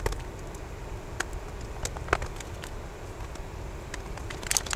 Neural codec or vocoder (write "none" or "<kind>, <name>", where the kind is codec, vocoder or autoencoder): none